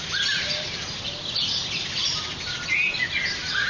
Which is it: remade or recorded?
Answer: recorded